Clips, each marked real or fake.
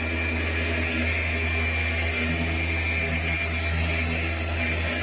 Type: real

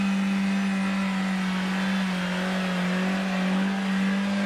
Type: real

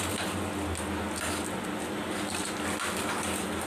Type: real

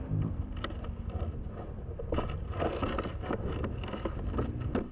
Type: real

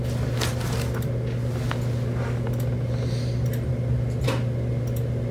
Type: real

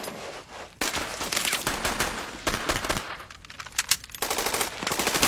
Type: real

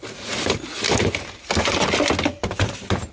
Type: real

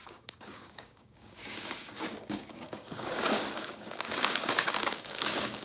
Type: fake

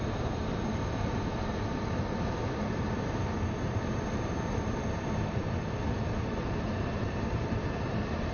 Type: fake